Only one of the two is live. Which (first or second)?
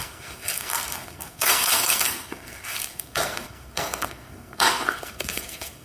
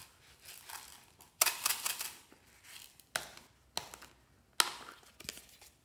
second